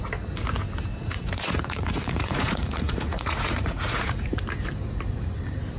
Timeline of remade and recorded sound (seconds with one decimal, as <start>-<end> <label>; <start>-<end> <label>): 0.0-0.9 recorded; 0.9-4.4 remade; 4.4-5.8 recorded